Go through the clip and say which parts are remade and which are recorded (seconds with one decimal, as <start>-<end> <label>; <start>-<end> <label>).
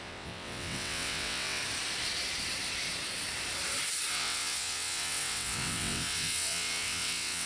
0.0-1.6 remade; 1.6-4.1 recorded; 4.1-7.5 remade